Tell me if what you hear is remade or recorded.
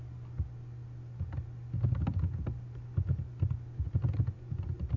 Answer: recorded